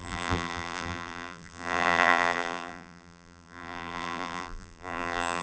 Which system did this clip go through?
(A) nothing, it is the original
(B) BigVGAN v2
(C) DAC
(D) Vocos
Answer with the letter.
B